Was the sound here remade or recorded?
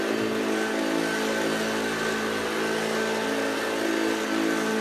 recorded